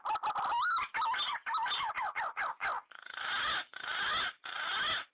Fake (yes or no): no